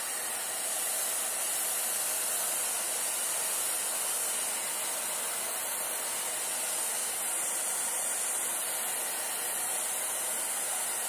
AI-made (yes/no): no